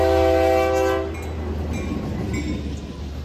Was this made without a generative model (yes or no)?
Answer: yes